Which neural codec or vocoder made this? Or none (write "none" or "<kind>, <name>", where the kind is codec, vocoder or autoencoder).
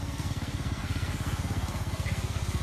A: codec, SNAC